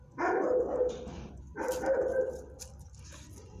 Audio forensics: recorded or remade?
remade